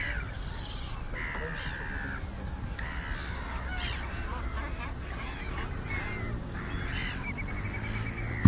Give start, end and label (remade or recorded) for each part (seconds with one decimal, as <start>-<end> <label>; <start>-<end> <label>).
0.0-8.5 recorded